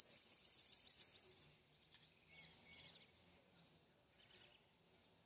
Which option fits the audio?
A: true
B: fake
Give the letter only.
A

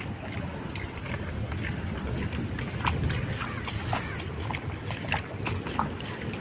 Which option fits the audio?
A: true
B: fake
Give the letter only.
A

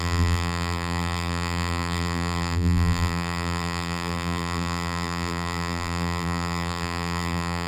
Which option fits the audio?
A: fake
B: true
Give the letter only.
A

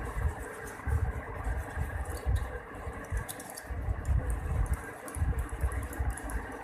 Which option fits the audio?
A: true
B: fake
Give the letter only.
B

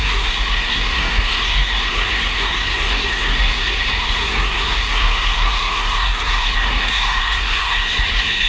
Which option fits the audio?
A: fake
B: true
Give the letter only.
A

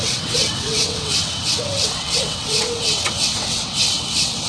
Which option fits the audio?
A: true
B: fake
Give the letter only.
B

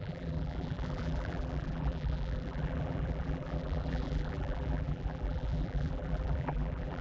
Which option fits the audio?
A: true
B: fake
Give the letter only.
B